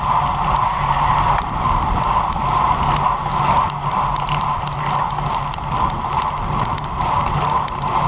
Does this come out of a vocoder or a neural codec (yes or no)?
no